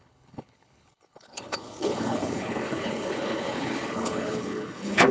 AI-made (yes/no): yes